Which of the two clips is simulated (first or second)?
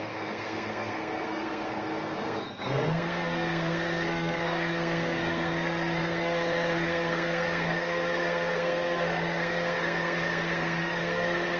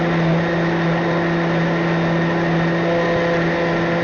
first